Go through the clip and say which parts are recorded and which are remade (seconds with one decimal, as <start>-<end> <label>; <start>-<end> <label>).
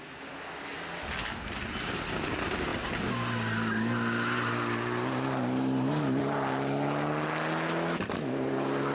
0.0-8.9 recorded